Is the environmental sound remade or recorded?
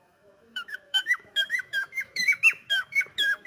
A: remade